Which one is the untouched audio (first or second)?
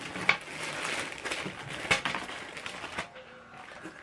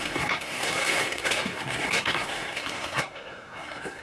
first